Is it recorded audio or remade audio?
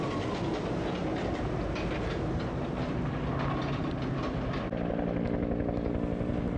recorded